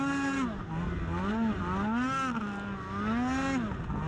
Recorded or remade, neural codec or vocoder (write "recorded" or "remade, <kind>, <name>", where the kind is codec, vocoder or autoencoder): recorded